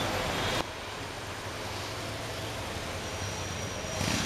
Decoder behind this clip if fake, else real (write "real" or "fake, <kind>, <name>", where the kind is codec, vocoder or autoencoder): real